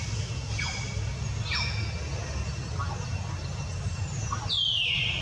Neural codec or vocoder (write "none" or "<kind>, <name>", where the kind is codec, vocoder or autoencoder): none